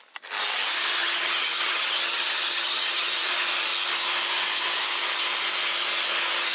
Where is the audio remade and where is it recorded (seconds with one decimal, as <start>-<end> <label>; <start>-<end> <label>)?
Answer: 0.0-1.0 recorded; 1.0-3.1 remade; 3.1-6.5 recorded